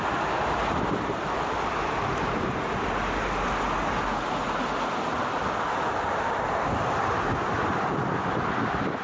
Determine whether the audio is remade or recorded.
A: recorded